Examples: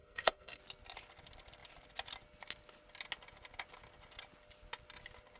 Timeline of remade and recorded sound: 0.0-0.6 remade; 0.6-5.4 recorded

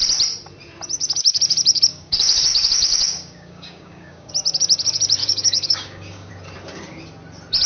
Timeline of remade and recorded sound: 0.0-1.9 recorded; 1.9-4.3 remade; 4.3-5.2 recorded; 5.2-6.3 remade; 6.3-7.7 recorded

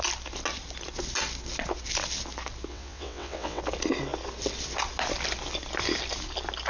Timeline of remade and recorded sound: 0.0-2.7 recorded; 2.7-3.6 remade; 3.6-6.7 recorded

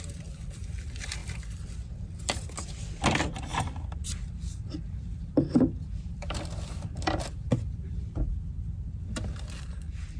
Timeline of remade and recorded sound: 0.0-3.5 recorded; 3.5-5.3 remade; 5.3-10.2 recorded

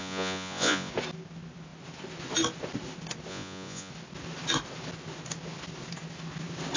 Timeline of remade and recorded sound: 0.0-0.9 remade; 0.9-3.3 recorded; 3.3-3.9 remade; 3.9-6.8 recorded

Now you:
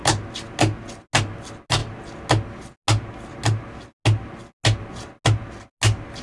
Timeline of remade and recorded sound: 0.0-6.2 recorded